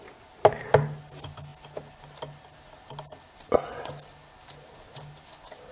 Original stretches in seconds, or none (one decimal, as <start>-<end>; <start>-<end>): 0.0-5.7

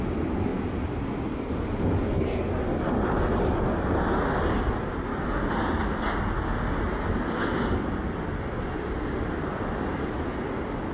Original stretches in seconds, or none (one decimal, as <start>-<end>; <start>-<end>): 0.0-10.9

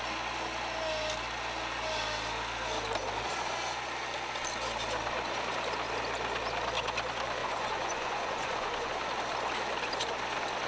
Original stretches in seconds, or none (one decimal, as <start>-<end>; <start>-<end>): 0.0-7.4; 8.9-10.7

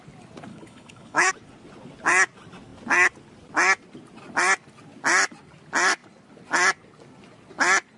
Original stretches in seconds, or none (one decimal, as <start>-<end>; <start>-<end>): 0.0-0.5; 1.3-8.0